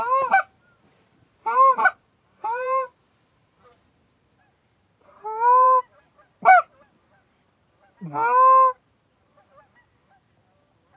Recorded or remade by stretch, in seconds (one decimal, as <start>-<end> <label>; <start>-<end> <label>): 0.0-1.4 recorded; 1.4-3.6 remade; 3.6-4.6 recorded; 4.6-5.8 remade; 5.8-11.0 recorded